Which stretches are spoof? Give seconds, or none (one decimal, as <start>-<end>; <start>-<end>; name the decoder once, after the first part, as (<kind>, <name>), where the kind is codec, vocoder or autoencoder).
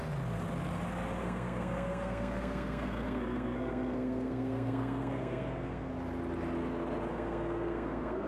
1.2-5.9 (codec, SNAC); 7.1-8.3